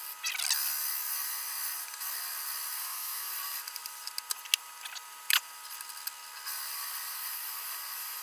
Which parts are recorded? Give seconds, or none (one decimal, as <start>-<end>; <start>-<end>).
0.0-2.8; 3.3-8.2